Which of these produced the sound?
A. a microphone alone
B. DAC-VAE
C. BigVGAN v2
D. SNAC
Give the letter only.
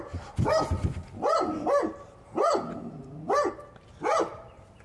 A